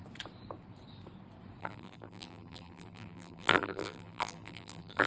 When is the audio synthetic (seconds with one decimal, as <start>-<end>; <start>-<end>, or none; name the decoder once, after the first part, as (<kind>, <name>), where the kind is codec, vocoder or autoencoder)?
1.6-5.1 (vocoder, BigVGAN v2)